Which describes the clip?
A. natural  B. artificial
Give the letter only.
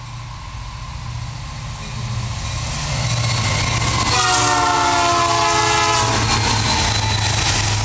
A